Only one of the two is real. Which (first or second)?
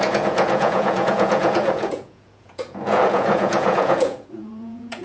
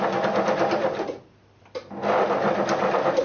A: second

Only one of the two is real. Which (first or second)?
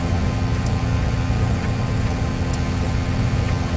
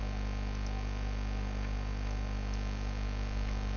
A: second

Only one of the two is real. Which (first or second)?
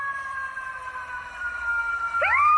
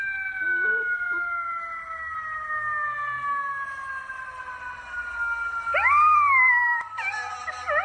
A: second